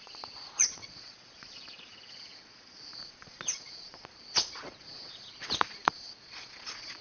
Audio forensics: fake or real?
fake